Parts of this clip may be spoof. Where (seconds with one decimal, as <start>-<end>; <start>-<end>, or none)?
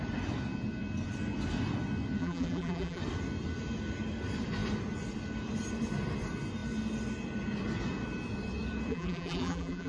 2.2-3.0; 8.9-9.9